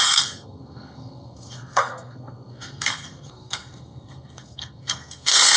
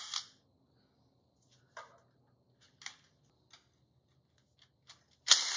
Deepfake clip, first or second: first